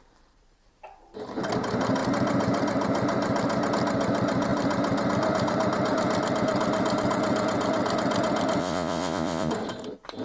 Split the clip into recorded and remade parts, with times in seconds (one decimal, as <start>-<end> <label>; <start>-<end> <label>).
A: 0.0-8.6 recorded; 8.6-9.5 remade; 9.5-10.2 recorded